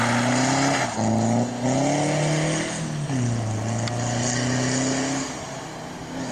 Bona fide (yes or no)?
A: yes